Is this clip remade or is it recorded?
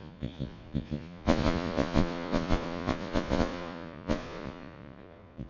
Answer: remade